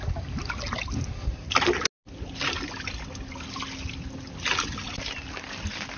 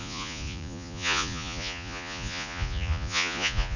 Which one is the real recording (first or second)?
first